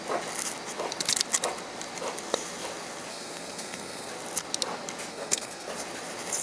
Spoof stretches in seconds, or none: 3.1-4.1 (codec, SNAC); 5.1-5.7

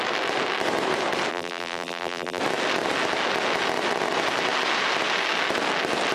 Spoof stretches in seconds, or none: 1.3-2.4 (vocoder, BigVGAN v2)

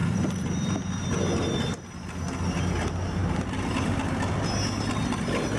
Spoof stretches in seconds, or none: 0.0-1.1 (vocoder, BigVGAN v2); 3.2-4.4

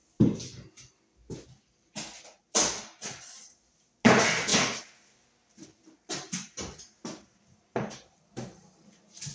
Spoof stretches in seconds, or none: none

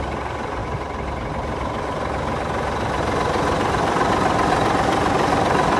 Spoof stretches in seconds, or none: none